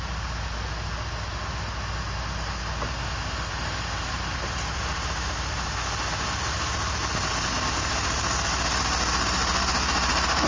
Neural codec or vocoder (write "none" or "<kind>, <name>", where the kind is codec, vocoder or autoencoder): none